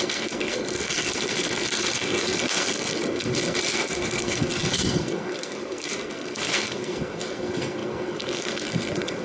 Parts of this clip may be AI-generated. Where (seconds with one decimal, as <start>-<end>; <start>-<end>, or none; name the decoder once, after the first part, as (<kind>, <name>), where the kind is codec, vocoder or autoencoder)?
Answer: 0.0-9.2 (codec, SNAC)